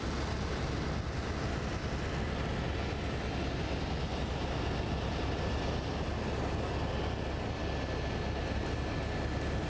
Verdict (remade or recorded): recorded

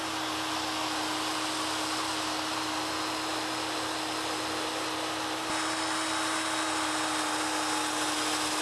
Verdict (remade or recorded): recorded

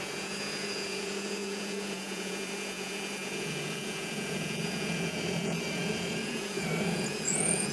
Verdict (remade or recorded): remade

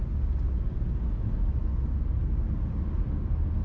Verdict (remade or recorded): recorded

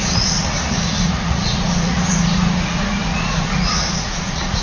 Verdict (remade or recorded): remade